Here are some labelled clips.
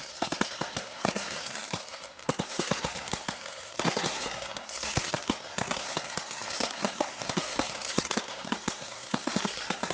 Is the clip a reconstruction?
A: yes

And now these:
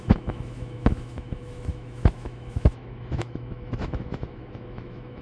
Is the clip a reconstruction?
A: yes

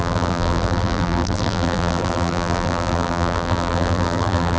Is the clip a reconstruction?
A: yes